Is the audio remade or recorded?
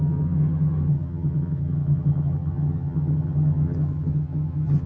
remade